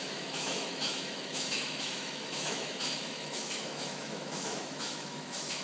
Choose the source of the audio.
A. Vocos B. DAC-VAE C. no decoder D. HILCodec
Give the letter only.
B